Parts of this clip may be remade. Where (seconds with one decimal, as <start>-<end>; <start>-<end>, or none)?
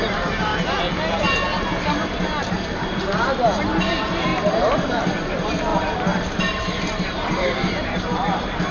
0.0-0.5; 2.8-8.7